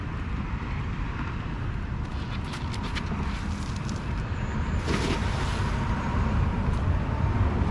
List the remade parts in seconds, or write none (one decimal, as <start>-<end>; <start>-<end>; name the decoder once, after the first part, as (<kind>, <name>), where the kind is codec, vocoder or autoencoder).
none